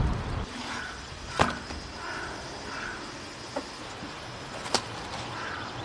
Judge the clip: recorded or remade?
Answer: recorded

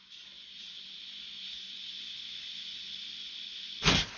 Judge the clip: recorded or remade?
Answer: recorded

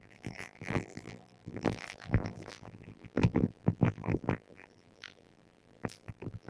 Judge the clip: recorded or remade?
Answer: remade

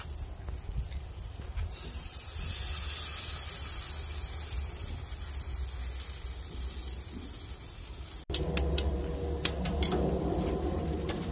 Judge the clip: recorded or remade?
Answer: recorded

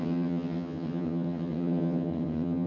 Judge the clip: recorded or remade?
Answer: remade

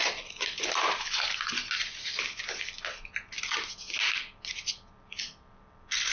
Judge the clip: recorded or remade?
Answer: recorded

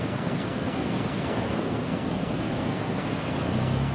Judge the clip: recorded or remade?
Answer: remade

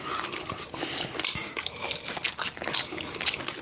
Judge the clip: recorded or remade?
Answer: recorded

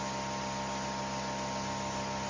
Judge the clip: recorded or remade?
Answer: recorded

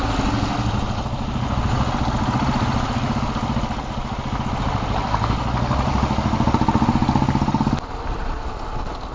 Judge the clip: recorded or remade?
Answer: recorded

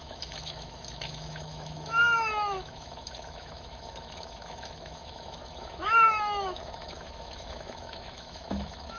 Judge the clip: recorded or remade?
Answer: remade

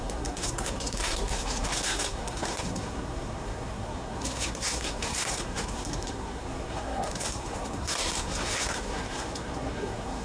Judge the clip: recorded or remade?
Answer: remade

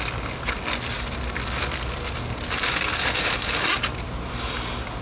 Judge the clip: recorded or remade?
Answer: recorded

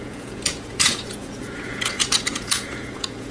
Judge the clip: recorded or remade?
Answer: remade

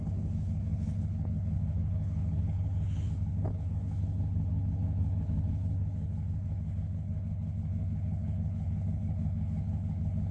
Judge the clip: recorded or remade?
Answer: remade